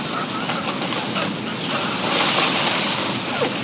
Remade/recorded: recorded